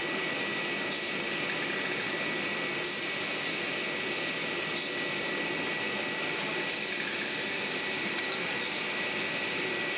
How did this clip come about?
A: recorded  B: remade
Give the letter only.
A